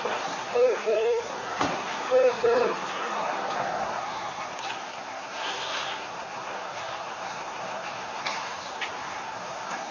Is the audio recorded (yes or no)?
no